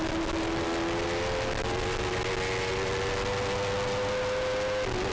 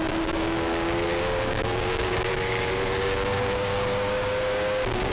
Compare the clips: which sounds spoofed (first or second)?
second